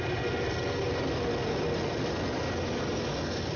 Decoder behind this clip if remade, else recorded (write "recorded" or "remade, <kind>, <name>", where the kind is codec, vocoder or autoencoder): recorded